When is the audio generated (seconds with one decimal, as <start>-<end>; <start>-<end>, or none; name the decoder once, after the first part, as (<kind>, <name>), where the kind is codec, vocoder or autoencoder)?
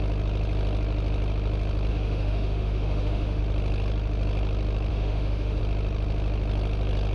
1.9-3.4 (autoencoder, DAC-VAE); 4.9-5.6